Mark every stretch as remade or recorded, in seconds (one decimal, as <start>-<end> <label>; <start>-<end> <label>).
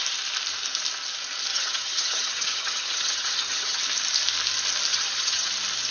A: 0.0-1.5 recorded; 1.5-3.8 remade; 3.8-4.9 recorded; 4.9-5.5 remade; 5.5-5.9 recorded